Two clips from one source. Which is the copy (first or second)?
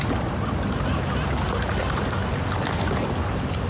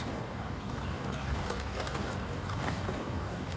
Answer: second